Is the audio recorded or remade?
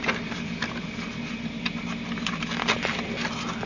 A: recorded